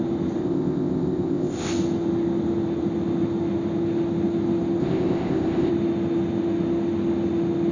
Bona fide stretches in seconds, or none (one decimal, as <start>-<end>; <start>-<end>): 0.0-0.4; 1.7-4.8; 5.7-7.7